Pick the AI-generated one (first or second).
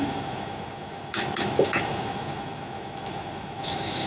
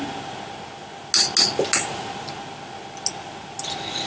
first